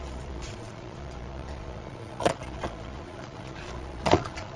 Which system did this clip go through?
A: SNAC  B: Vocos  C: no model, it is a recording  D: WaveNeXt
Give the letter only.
B